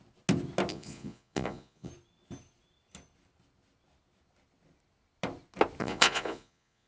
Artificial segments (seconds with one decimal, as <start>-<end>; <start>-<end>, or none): 0.7-1.9; 5.8-6.9